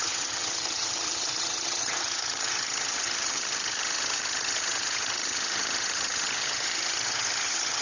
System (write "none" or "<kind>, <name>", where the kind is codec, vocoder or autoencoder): vocoder, HiFi-GAN